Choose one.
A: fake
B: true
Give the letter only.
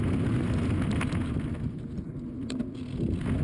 A